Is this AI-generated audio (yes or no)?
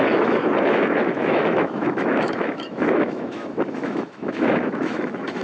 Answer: yes